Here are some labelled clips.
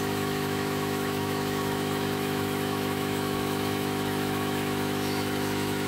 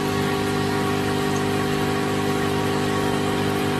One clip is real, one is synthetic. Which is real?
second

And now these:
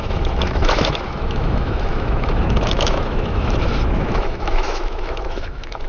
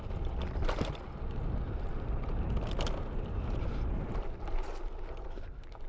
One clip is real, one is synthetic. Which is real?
second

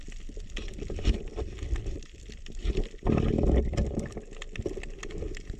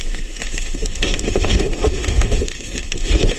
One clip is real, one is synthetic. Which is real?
first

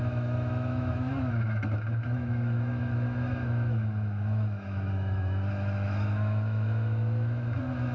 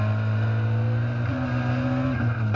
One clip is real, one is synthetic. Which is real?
second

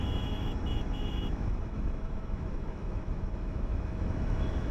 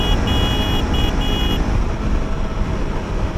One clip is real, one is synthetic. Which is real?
second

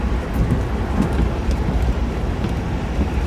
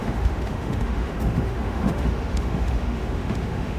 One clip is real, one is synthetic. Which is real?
first